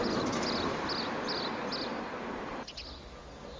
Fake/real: real